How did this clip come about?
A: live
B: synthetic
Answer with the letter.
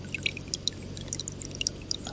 A